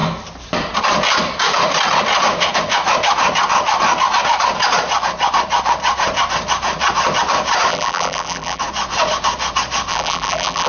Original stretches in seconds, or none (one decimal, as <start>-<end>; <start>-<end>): 0.0-7.7; 8.6-9.9